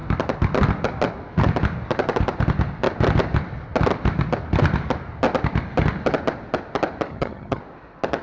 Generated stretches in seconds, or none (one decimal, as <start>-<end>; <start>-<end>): 7.1-7.6